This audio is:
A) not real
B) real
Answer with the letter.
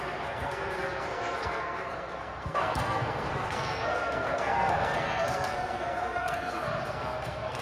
A